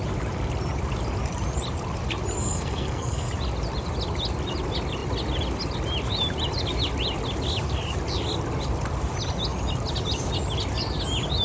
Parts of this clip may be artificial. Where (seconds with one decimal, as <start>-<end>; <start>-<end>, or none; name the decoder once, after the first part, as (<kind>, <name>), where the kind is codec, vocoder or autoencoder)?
2.4-3.3 (codec, SNAC)